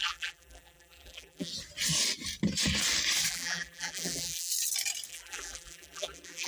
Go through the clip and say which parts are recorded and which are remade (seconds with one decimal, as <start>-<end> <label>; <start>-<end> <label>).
0.0-1.5 remade; 1.5-3.3 recorded; 3.3-4.5 remade; 4.5-5.1 recorded; 5.1-6.5 remade